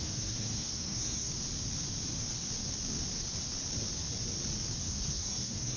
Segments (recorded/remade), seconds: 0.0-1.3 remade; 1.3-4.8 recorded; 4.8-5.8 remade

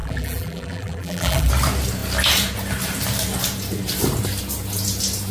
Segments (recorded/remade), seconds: 0.0-1.5 remade; 1.5-5.3 recorded